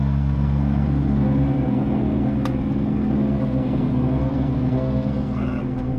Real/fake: fake